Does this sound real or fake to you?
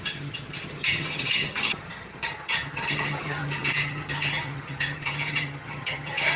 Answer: fake